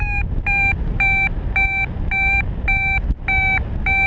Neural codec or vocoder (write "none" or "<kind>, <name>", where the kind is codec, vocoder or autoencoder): none